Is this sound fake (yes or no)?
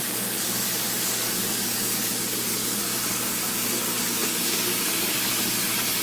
yes